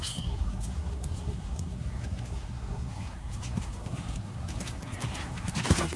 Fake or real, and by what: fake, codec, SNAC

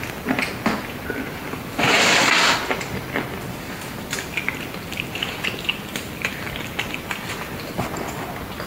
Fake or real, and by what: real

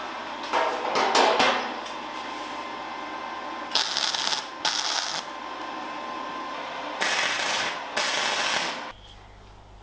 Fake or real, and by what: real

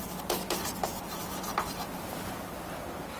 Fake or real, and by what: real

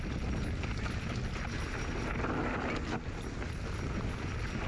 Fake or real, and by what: real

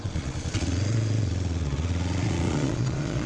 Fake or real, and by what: fake, vocoder, Vocos